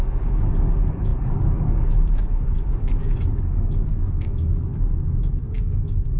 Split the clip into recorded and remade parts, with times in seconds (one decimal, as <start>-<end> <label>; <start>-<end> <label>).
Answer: 0.0-4.7 remade; 4.7-5.3 recorded; 5.3-6.2 remade